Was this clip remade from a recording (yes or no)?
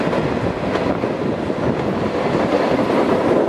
no